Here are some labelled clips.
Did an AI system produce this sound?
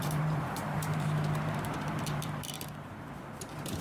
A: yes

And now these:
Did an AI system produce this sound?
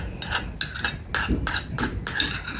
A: no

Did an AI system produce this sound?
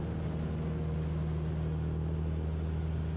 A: no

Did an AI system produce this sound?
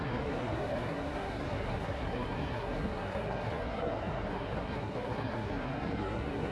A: yes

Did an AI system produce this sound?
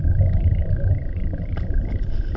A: yes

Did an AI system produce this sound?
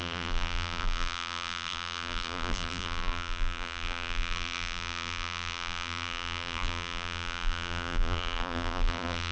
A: yes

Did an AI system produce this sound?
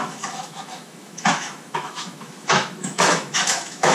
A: yes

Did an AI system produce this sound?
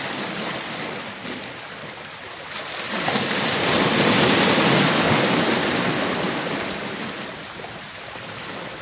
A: yes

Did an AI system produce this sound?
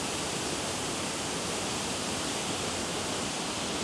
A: no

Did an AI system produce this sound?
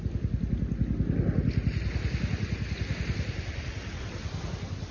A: no